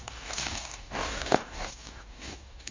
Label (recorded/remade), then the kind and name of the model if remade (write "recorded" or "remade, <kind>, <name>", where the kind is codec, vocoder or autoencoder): remade, codec, DAC